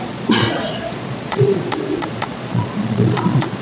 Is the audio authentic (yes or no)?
no